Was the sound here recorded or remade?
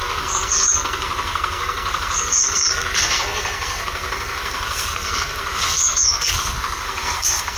remade